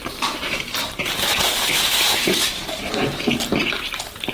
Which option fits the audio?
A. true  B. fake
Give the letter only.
B